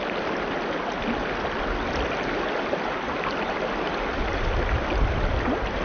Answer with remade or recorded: recorded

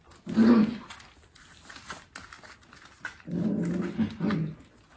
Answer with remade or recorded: recorded